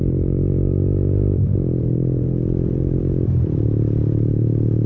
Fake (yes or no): yes